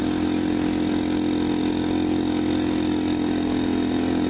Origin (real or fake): real